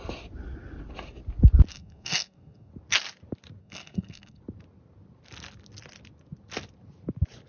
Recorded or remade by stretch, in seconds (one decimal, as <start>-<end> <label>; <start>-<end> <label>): 0.0-1.7 recorded; 1.7-2.7 remade; 2.7-3.6 recorded; 3.6-4.4 remade; 4.4-7.5 recorded